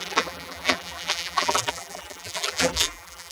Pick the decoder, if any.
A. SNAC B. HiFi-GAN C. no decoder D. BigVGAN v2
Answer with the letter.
D